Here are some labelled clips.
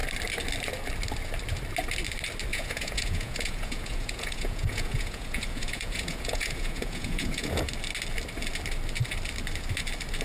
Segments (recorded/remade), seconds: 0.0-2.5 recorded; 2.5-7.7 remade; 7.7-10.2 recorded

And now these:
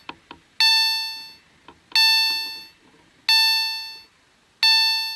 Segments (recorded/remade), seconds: 0.0-5.2 recorded

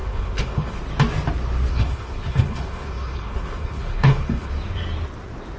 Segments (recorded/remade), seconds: 0.0-0.8 remade; 0.8-1.7 recorded; 1.7-4.5 remade; 4.5-5.6 recorded

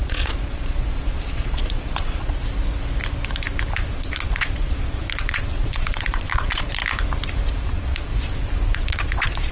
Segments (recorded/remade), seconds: 0.0-2.4 remade; 2.4-3.9 recorded; 3.9-6.8 remade; 6.8-7.6 recorded; 7.6-8.1 remade; 8.1-8.7 recorded; 8.7-9.5 remade

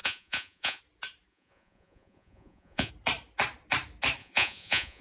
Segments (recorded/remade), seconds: 0.0-0.8 remade; 0.8-1.3 recorded; 1.3-2.9 remade; 2.9-4.2 recorded; 4.2-5.0 remade

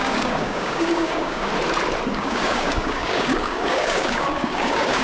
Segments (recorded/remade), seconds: 0.0-1.5 remade; 1.5-2.1 recorded; 2.1-5.0 remade

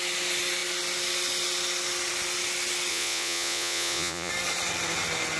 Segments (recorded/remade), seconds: 0.0-2.9 recorded; 2.9-4.3 remade; 4.3-5.4 recorded